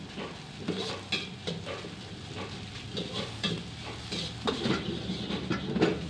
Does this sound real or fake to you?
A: real